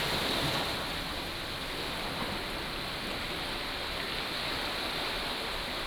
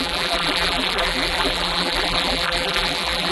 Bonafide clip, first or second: first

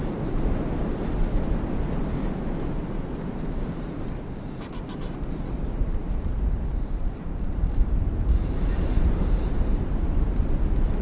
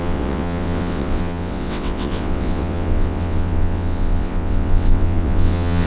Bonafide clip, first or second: first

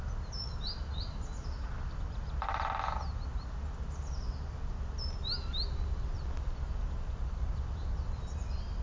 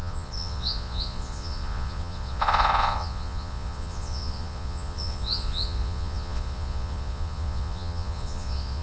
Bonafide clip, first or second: first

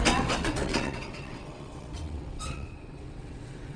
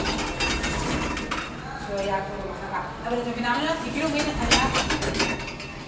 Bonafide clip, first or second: second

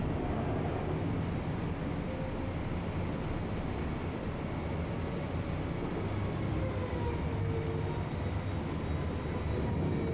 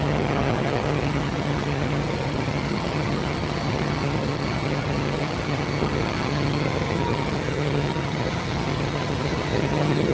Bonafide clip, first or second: first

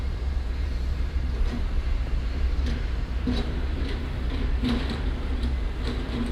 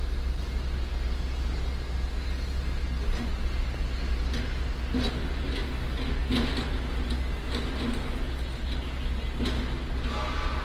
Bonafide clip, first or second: second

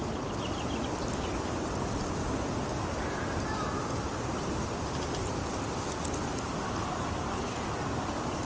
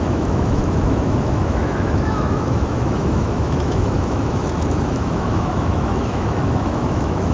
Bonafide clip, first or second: first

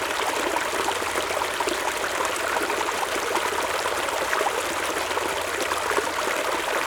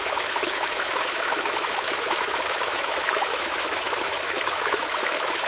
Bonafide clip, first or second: first